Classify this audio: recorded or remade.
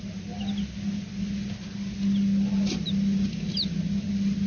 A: recorded